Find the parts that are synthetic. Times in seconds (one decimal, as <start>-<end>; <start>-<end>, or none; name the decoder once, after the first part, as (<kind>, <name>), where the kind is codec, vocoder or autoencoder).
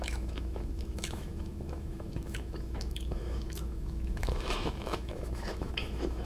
0.0-6.3 (autoencoder, DAC-VAE)